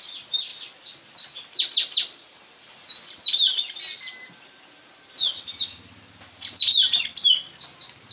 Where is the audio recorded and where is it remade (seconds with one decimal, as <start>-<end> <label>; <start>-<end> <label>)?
0.0-8.1 recorded